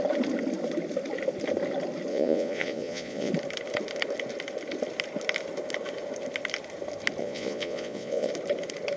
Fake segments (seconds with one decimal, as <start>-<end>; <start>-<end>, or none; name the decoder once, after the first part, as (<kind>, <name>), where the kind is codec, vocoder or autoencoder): 2.1-3.3 (vocoder, Vocos); 7.2-8.3